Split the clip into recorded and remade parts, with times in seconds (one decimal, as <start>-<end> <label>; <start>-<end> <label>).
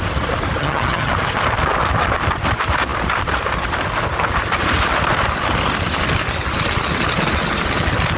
0.0-0.6 recorded; 0.6-1.1 remade; 1.1-8.2 recorded